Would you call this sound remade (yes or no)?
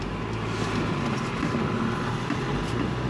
no